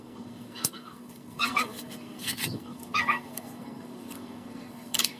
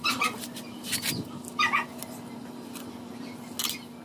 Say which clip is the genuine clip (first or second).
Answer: second